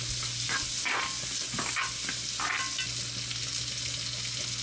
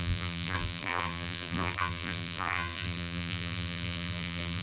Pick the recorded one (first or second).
first